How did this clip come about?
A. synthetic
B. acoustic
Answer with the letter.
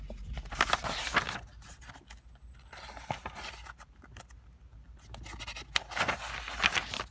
B